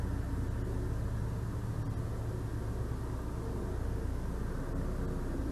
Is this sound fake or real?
real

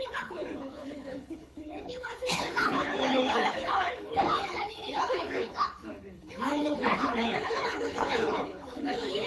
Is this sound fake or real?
fake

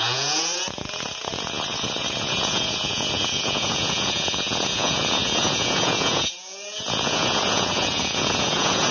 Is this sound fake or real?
fake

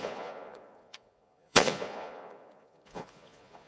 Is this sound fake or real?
fake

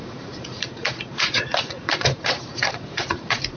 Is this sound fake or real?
fake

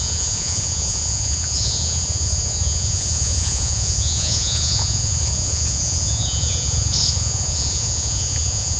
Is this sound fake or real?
fake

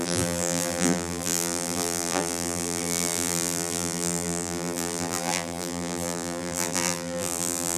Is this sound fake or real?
fake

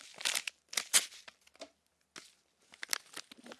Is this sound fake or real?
real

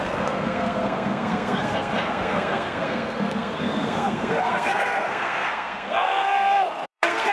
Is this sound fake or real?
fake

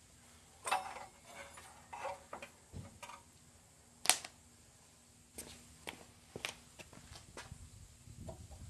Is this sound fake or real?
real